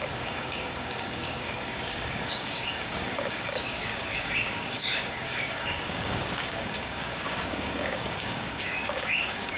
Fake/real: fake